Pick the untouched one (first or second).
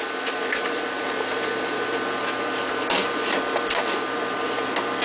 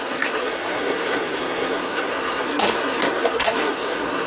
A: first